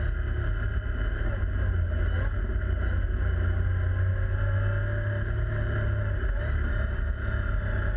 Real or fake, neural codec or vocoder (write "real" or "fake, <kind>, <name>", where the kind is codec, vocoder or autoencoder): real